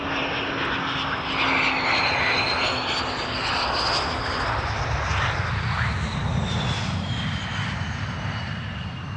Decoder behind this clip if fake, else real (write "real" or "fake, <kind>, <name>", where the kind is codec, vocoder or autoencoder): real